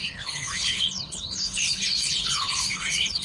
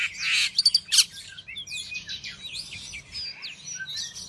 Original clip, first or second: second